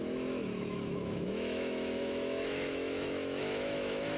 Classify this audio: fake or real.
fake